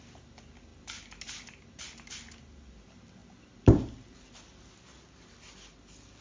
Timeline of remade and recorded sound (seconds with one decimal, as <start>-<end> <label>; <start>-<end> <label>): 0.0-6.2 recorded